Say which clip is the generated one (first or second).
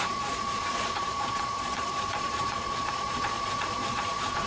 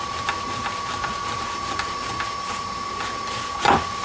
first